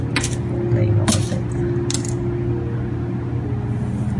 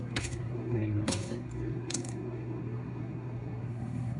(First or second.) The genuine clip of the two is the first